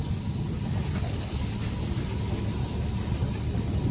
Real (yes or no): yes